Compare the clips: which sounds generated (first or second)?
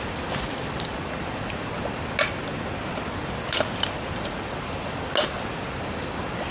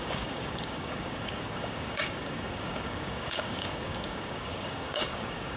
second